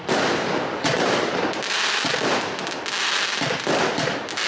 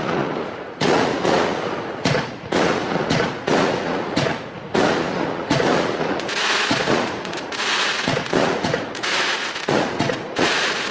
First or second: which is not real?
second